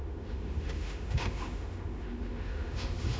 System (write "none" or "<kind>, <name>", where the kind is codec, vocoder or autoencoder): autoencoder, DAC-VAE